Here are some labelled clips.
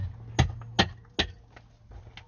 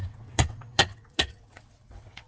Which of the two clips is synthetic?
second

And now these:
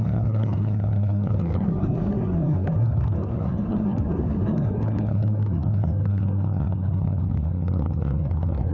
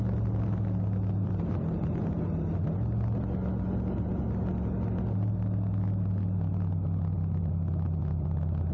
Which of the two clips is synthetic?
first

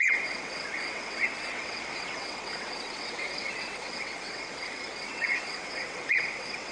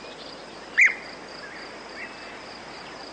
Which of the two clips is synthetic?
first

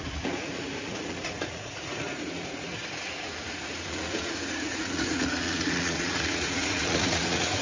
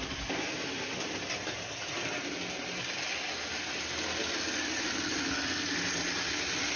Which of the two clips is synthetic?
first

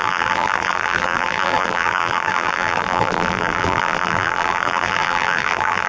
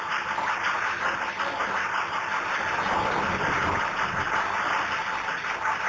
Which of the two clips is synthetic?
first